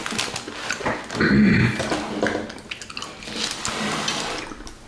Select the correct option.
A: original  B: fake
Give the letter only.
A